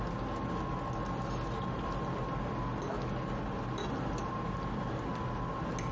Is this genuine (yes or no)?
yes